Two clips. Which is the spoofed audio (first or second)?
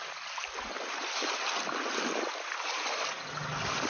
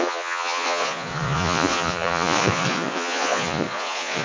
second